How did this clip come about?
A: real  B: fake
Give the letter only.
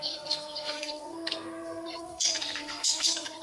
B